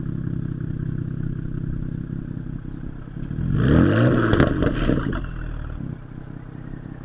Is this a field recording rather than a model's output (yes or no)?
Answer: yes